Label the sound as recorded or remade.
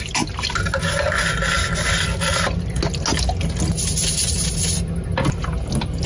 recorded